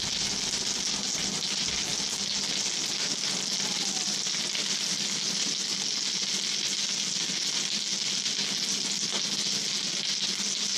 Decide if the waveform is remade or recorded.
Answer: recorded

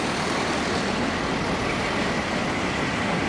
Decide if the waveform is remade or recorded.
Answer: remade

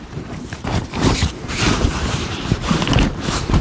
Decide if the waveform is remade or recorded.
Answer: remade